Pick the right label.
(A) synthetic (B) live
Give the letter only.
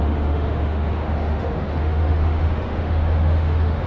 A